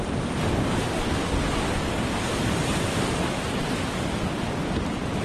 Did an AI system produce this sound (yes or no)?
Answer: no